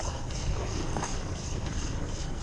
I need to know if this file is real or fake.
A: fake